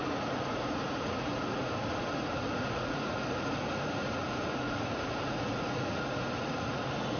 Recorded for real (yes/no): no